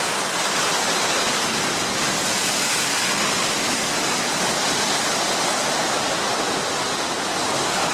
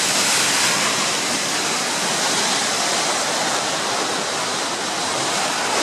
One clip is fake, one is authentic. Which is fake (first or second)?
second